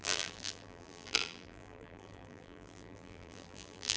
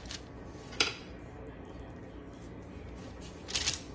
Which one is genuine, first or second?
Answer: second